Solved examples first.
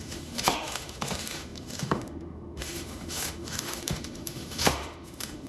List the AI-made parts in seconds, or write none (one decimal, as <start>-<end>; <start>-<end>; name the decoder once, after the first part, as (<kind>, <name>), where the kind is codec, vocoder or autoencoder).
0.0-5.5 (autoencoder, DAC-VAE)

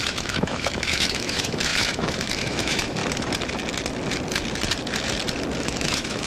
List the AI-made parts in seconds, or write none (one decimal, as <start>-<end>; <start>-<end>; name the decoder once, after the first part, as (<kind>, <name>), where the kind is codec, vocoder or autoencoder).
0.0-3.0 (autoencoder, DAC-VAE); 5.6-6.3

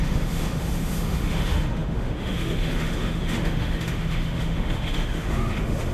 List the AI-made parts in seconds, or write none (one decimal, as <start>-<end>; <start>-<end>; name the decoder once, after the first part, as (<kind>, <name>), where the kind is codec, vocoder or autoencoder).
0.0-5.9 (autoencoder, DAC-VAE)

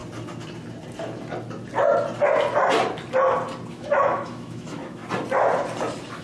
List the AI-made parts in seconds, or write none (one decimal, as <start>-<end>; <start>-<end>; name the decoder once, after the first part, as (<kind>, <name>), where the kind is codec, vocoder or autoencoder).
3.7-5.0 (autoencoder, DAC-VAE)

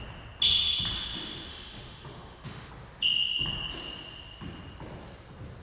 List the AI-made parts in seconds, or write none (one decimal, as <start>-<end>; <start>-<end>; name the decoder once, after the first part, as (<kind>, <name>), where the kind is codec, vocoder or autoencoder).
1.5-2.7 (autoencoder, DAC-VAE)

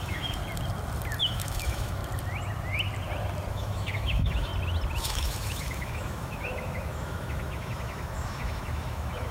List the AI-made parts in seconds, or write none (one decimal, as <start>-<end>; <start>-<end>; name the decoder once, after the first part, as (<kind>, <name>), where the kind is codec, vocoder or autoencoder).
0.0-0.4 (autoencoder, DAC-VAE); 1.2-2.0; 3.5-4.5; 5.0-9.3

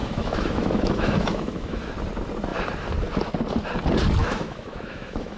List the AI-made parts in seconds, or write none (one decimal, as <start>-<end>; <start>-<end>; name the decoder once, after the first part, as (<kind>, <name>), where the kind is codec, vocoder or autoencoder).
0.0-1.9 (autoencoder, DAC-VAE); 4.2-5.4